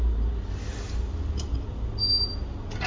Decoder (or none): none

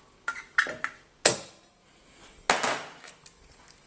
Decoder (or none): none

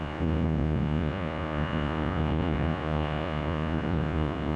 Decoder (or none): vocoder, Vocos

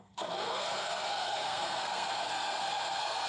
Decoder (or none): codec, SNAC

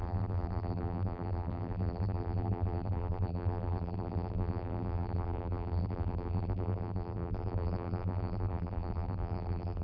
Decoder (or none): vocoder, BigVGAN v2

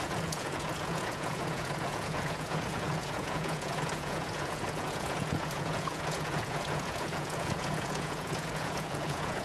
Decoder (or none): vocoder, Vocos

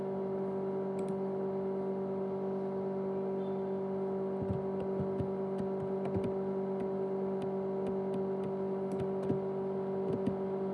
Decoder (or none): none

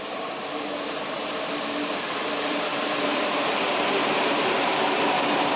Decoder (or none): vocoder, BigVGAN v2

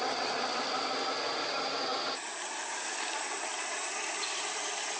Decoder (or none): none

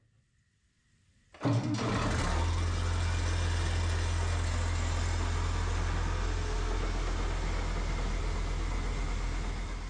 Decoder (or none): none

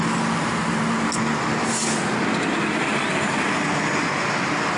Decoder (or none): none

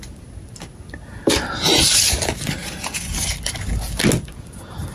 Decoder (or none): none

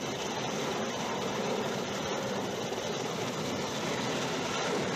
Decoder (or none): vocoder, BigVGAN v2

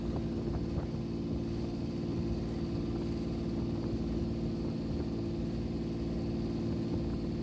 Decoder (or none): none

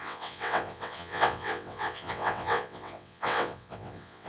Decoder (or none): vocoder, WaveNeXt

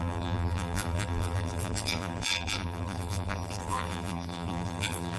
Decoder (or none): vocoder, BigVGAN v2